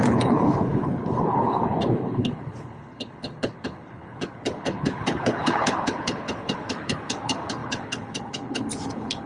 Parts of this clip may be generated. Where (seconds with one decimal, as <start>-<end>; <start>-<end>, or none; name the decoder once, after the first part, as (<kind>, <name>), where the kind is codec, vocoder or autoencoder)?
0.0-9.3 (codec, HILCodec)